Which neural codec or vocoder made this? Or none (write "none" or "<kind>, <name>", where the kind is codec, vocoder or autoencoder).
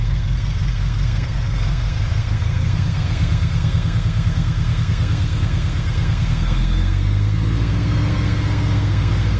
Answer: codec, SNAC